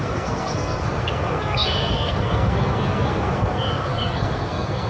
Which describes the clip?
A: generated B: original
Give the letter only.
A